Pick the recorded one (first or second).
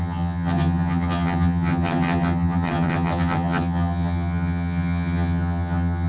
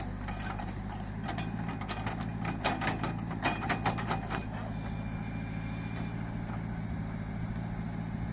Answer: second